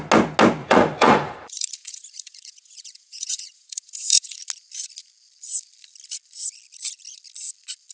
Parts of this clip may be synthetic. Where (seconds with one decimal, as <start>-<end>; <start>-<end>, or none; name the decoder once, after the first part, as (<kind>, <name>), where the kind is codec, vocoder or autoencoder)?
0.6-4.4 (vocoder, Vocos)